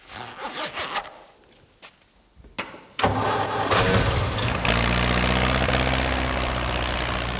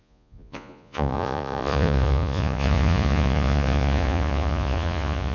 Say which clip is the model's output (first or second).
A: second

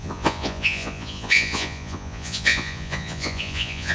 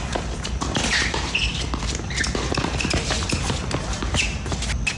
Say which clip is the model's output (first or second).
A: first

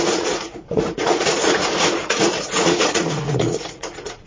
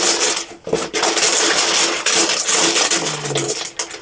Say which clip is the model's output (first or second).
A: first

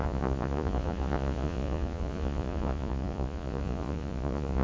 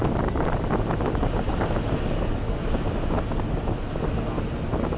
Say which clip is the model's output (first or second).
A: first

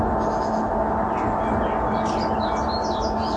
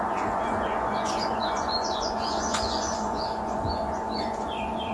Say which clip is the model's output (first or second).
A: second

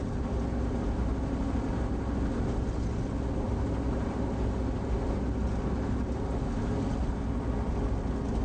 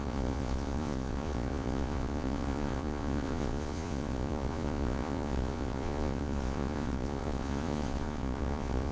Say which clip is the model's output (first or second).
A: second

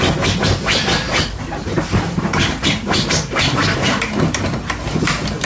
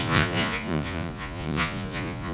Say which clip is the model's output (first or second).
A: second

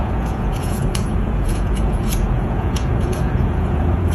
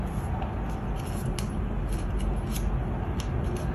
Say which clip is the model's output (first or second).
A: first